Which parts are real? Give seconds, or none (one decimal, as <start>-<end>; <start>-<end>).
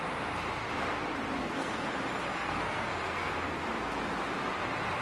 0.0-1.4; 1.9-2.3; 3.3-5.0